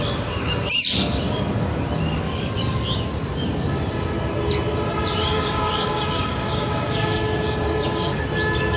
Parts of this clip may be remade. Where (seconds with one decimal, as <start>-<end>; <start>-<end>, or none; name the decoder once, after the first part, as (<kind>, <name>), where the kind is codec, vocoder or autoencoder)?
5.2-8.2 (codec, DAC)